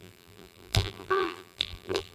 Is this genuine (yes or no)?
no